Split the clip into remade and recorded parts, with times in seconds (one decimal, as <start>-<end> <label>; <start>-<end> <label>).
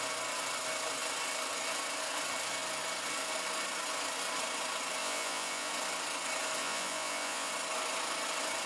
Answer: 0.0-5.0 recorded; 5.0-5.7 remade; 5.7-6.6 recorded; 6.6-7.5 remade; 7.5-8.7 recorded